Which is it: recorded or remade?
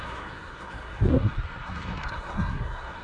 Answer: remade